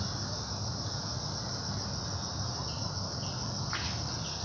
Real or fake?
real